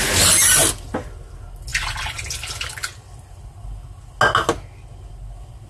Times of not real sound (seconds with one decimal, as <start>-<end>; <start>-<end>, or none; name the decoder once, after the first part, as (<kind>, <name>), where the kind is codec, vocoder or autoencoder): none

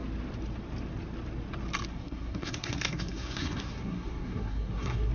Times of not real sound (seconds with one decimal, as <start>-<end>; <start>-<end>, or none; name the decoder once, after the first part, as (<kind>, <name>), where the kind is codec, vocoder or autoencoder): 1.9-5.1 (codec, SNAC)